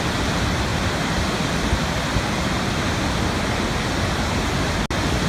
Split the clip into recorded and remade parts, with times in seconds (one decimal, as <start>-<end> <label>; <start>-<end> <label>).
0.0-5.3 recorded